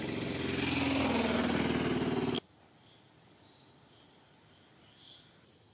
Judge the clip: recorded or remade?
recorded